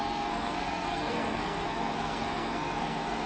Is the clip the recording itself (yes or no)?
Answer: no